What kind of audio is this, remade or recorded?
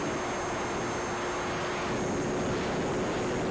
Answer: recorded